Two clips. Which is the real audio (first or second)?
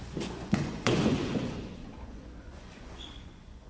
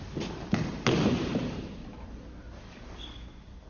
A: second